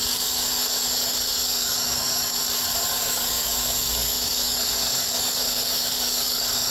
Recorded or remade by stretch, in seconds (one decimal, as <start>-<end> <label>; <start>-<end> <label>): 0.0-6.7 remade